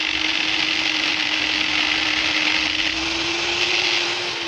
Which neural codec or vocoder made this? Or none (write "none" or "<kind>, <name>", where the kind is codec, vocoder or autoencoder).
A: none